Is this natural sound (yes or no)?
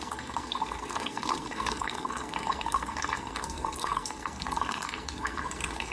no